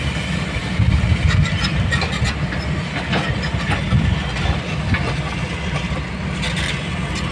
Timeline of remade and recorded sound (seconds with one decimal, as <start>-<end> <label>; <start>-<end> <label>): 0.0-7.3 recorded